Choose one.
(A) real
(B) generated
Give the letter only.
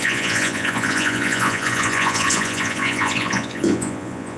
B